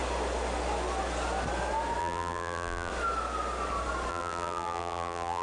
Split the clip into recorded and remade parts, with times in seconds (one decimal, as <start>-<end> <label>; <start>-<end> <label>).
0.0-2.0 recorded; 2.0-2.9 remade; 2.9-4.1 recorded; 4.1-5.4 remade